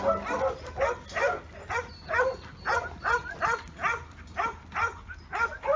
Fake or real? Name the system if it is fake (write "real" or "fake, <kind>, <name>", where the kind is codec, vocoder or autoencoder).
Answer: real